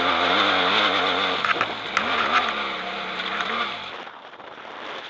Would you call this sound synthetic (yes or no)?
no